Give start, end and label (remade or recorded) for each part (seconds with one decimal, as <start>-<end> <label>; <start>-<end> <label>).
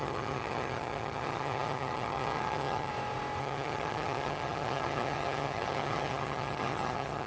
0.0-2.9 remade; 2.9-3.4 recorded; 3.4-7.3 remade